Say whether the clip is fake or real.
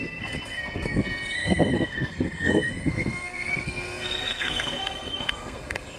fake